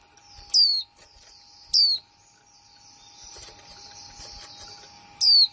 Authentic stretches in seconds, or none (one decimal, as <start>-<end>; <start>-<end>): 0.0-5.5